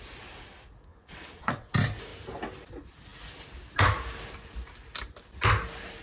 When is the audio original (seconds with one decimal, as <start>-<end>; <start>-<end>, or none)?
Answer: 0.0-0.9; 1.7-6.0